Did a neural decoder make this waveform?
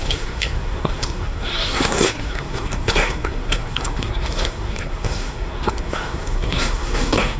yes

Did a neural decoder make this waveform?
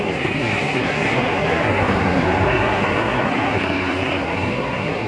yes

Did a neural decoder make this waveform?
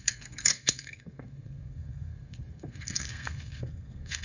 yes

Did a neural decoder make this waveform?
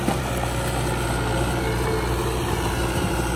no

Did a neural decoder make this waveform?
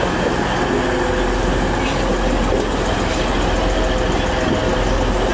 no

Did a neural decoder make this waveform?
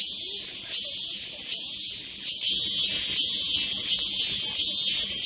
no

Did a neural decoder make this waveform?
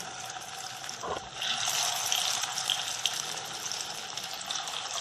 no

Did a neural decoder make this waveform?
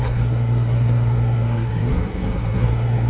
yes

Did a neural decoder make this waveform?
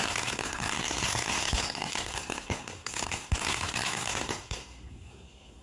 yes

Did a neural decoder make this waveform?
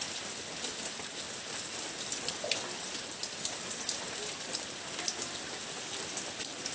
no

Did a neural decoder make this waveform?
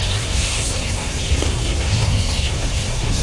yes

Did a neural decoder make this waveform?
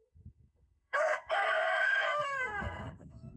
yes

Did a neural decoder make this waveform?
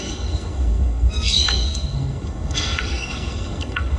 yes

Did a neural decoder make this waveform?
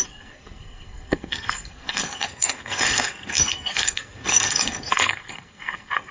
yes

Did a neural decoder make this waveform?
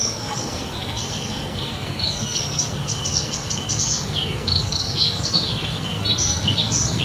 yes